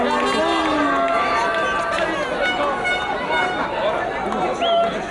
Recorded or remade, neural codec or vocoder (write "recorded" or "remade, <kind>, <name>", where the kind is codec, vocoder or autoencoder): recorded